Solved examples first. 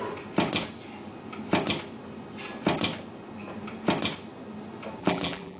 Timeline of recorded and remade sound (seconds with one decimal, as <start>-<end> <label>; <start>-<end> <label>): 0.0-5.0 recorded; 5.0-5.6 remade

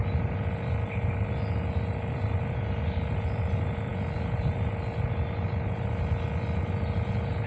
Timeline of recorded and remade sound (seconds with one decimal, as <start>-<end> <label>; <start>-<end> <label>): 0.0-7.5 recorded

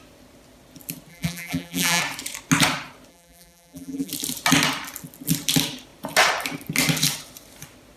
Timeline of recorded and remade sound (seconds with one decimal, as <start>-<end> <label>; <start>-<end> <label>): 0.0-1.1 recorded; 1.1-2.0 remade; 2.0-3.1 recorded; 3.1-4.1 remade; 4.1-8.0 recorded

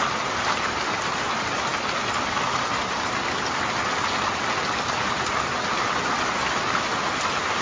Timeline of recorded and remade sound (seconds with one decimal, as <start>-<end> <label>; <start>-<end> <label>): 0.0-7.6 recorded